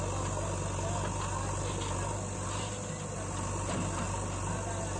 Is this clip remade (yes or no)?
no